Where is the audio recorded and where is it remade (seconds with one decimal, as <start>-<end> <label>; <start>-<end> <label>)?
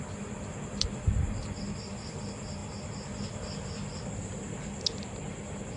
0.0-5.8 recorded